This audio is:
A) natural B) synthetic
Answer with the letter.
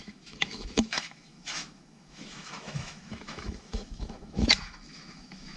B